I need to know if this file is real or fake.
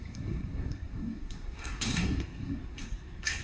fake